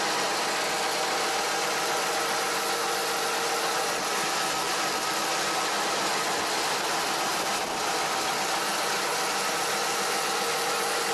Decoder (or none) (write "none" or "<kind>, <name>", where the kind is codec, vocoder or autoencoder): none